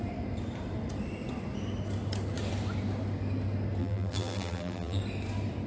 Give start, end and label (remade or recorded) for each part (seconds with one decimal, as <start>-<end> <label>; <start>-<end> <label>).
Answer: 0.0-3.8 recorded; 3.8-5.0 remade; 5.0-5.7 recorded